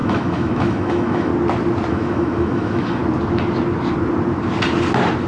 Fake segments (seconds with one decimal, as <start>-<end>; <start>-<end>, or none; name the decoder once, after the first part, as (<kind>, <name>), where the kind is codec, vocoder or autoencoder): 0.0-1.3 (autoencoder, DAC-VAE); 1.9-3.0